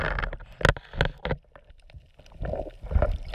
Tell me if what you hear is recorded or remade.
recorded